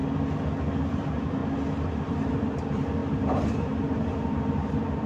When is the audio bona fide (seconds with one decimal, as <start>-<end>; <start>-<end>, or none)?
0.0-0.8; 1.4-2.1